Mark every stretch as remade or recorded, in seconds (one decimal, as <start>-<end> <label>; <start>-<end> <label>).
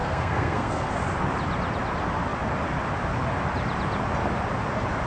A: 0.0-0.9 remade; 0.9-5.1 recorded